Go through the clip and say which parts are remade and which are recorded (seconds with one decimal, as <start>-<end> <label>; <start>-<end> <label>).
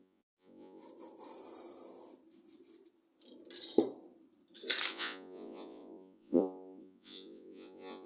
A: 0.0-0.8 remade; 0.8-4.9 recorded; 4.9-8.1 remade